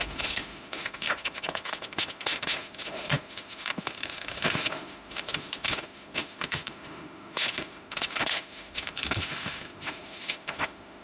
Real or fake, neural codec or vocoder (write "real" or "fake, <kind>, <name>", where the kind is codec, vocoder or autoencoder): fake, autoencoder, DAC-VAE